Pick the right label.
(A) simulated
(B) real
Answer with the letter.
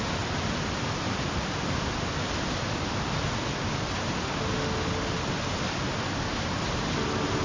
B